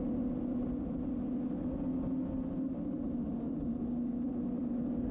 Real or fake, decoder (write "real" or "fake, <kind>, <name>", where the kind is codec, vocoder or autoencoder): real